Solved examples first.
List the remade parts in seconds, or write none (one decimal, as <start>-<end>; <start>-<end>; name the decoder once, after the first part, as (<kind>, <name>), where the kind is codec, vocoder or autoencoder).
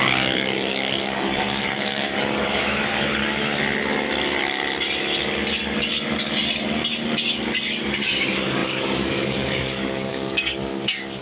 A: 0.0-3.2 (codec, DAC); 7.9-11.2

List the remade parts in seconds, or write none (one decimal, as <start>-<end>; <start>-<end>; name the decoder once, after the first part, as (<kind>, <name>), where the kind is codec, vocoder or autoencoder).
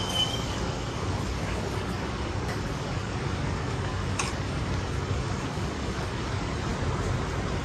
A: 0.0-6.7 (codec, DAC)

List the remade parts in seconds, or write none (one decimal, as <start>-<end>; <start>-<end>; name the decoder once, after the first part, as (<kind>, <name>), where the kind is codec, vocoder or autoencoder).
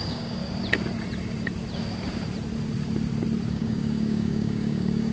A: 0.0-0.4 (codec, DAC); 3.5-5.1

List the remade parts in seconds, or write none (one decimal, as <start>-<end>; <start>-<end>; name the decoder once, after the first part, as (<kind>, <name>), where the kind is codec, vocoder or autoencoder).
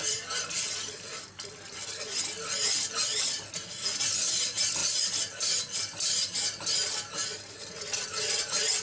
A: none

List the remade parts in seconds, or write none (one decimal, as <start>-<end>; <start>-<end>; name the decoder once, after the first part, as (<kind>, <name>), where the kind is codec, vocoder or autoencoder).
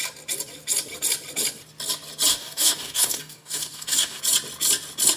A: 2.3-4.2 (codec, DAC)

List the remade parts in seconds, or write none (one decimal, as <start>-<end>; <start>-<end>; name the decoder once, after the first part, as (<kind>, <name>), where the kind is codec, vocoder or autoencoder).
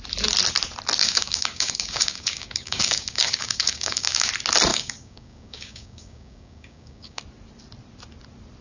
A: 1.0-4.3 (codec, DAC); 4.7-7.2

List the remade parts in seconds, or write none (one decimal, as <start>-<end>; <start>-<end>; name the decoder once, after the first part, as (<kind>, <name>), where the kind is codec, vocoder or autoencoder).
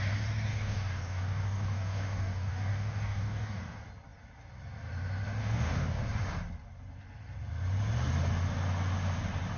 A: 0.5-3.6 (codec, DAC); 5.4-6.0